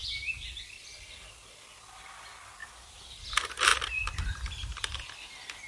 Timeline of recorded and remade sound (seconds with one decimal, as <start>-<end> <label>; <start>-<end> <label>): 0.0-2.6 recorded; 2.6-3.2 remade; 3.2-3.7 recorded; 3.7-4.2 remade; 4.2-5.7 recorded